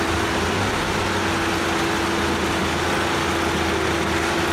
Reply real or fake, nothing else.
real